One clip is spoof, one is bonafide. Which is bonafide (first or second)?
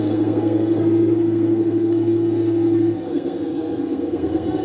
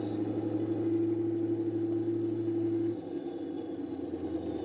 second